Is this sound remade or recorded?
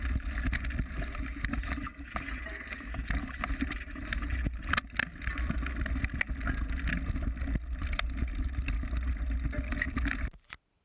recorded